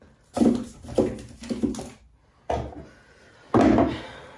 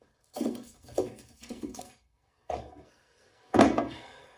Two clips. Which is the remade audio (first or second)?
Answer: second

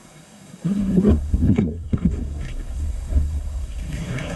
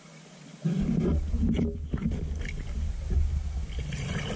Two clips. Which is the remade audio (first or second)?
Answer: first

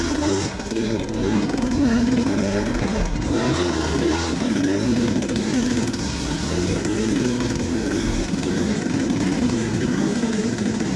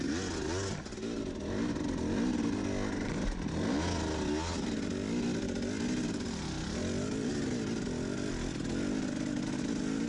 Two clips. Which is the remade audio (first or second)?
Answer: first